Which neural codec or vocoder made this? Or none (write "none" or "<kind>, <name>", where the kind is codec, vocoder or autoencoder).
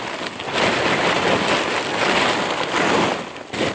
none